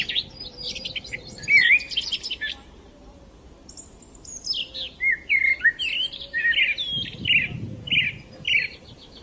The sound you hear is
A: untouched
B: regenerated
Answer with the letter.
A